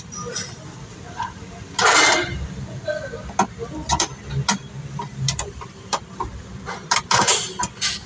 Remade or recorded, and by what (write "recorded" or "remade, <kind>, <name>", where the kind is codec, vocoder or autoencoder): remade, vocoder, BigVGAN v2